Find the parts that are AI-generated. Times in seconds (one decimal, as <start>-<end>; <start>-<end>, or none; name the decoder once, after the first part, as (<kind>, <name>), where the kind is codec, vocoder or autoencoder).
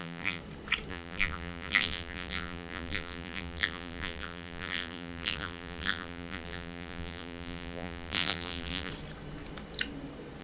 0.0-0.4 (vocoder, BigVGAN v2); 0.9-8.9